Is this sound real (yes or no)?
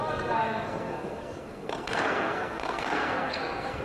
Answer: no